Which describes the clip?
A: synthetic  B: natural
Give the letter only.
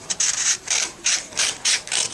A